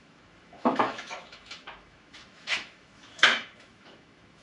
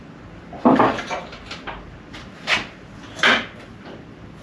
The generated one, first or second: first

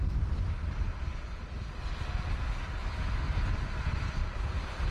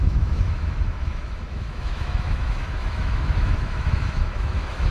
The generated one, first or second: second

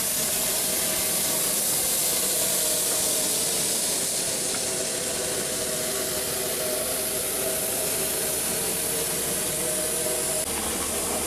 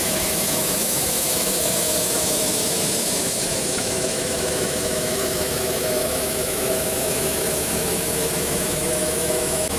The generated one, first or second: second